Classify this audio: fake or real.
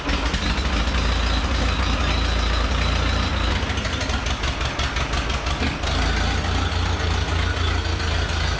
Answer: real